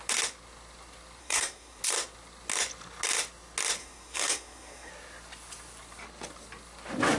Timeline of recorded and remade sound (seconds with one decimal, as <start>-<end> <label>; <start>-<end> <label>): 0.0-1.2 recorded; 1.2-1.8 remade; 1.8-3.8 recorded; 3.8-4.9 remade; 4.9-7.2 recorded